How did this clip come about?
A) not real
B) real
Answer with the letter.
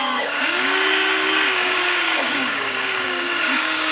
A